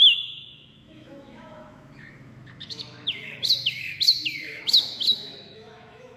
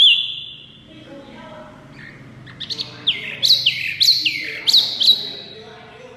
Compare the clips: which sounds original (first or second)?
second